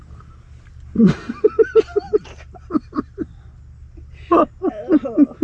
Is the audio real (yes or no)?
yes